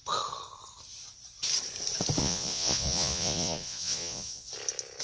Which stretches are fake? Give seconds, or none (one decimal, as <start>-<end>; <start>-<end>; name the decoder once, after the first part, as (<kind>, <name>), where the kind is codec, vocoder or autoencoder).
2.2-4.5 (vocoder, Vocos)